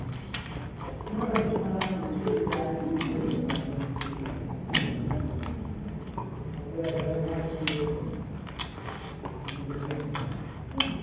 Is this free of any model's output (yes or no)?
yes